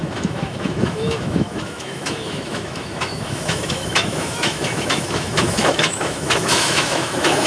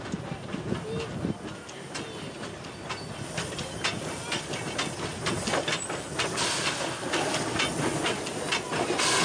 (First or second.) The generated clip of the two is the first